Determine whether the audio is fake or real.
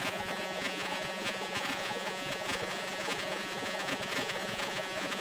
fake